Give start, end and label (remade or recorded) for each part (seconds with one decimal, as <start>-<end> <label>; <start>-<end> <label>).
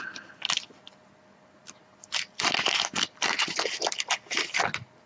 0.0-5.1 recorded